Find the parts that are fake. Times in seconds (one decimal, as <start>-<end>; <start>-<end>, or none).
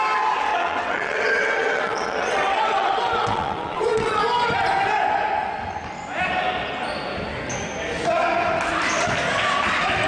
0.5-4.2